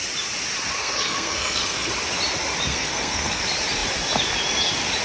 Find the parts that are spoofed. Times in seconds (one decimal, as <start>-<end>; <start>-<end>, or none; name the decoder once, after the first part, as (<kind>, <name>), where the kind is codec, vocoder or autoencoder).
0.8-1.9 (codec, SNAC); 2.7-3.4